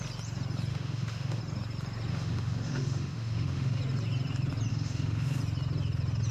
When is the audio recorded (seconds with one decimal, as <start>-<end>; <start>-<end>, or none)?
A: 0.0-0.7; 1.4-2.1; 3.8-4.7; 5.4-6.3